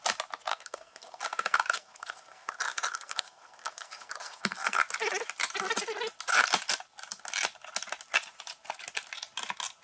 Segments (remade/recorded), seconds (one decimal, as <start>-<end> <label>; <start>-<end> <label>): 0.0-0.5 recorded; 0.5-4.8 remade; 4.8-9.8 recorded